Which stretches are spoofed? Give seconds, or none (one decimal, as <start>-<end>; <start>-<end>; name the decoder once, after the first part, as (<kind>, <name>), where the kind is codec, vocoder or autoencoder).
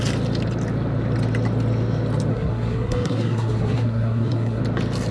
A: 2.3-4.6 (codec, SNAC)